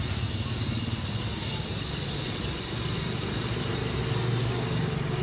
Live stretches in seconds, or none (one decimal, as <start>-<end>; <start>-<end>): 0.0-4.4